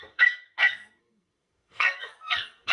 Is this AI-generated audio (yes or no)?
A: yes